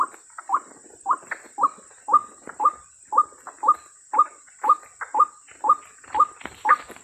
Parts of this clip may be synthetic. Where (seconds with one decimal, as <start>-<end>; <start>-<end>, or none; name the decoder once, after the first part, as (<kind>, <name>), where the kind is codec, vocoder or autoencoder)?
2.2-3.0 (vocoder, BigVGAN v2)